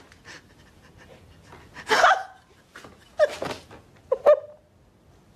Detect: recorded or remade recorded